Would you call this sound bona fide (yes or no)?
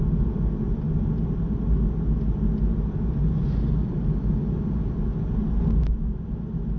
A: yes